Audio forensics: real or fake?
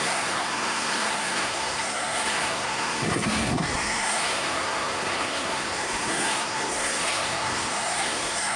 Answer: fake